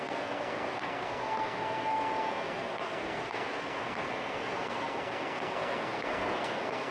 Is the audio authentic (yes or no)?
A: no